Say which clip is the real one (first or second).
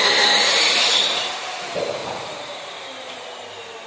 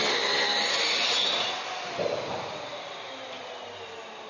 second